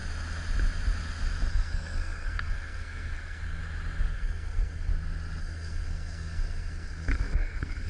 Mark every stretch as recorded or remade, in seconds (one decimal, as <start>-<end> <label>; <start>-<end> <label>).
0.0-1.5 recorded; 1.5-3.6 remade; 3.6-4.1 recorded; 4.1-4.9 remade; 4.9-5.4 recorded; 5.4-7.9 remade